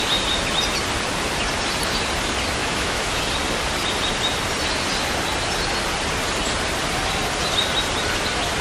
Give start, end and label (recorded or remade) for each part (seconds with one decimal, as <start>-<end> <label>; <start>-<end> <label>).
0.0-2.6 recorded; 2.6-3.2 remade; 3.2-8.6 recorded